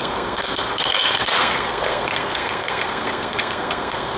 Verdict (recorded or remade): remade